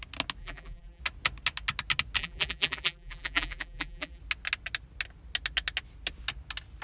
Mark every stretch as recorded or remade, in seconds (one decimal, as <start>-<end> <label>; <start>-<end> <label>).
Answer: 0.0-0.4 recorded; 0.4-1.0 remade; 1.0-2.2 recorded; 2.2-4.2 remade; 4.2-6.8 recorded